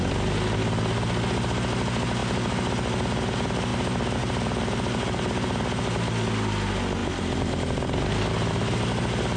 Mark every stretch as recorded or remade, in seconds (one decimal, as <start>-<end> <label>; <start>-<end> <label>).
0.0-2.2 recorded; 2.2-2.7 remade; 2.7-3.7 recorded; 3.7-4.2 remade; 4.2-7.0 recorded; 7.0-8.8 remade; 8.8-9.4 recorded

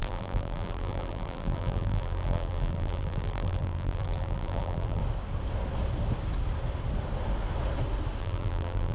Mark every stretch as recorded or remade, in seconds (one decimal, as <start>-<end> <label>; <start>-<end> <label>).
0.0-5.0 remade; 5.0-8.2 recorded; 8.2-8.9 remade

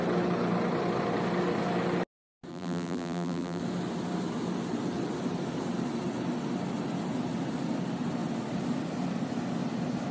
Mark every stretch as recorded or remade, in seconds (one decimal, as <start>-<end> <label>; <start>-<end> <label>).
0.0-2.5 recorded; 2.5-3.6 remade; 3.6-10.1 recorded